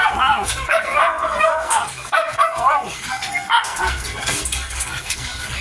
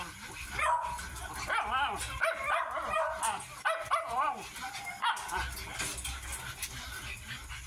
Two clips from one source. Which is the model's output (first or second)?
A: first